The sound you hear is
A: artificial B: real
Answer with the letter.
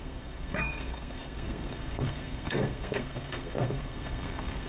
A